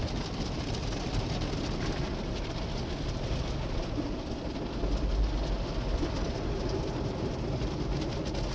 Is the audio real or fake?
real